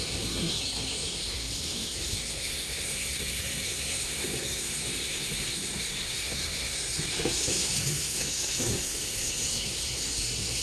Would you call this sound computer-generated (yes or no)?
yes